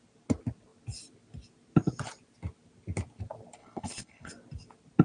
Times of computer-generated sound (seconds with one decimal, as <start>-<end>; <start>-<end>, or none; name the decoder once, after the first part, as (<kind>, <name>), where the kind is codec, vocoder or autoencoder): 3.6-4.3 (codec, HILCodec)